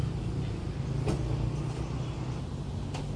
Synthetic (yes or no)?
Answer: no